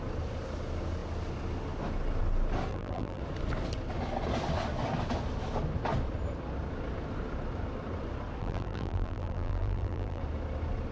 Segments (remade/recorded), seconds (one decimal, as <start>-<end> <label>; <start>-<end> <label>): 0.0-2.7 recorded; 2.7-3.2 remade; 3.2-8.4 recorded; 8.4-10.2 remade; 10.2-10.9 recorded

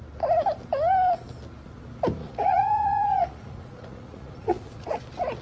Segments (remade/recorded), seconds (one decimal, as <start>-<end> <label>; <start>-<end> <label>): 0.0-2.2 recorded; 2.2-5.0 remade; 5.0-5.4 recorded

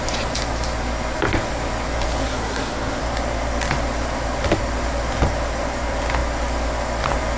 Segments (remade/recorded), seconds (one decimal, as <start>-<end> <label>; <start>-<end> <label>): 0.0-2.2 recorded; 2.2-3.0 remade; 3.0-7.4 recorded

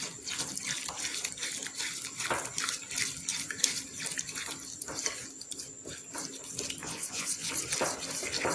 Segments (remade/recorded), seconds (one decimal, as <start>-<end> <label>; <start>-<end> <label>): 0.0-6.8 recorded; 6.8-7.5 remade; 7.5-8.5 recorded

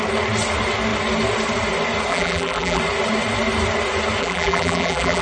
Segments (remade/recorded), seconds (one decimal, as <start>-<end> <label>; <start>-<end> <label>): 0.0-2.1 recorded; 2.1-2.8 remade; 2.8-4.2 recorded; 4.2-5.2 remade

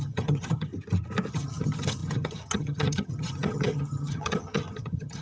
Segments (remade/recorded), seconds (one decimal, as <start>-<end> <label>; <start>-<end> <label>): 0.0-0.7 remade; 0.7-1.3 recorded; 1.3-5.2 remade